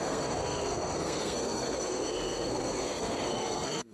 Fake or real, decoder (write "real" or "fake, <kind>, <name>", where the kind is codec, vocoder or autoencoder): fake, codec, SNAC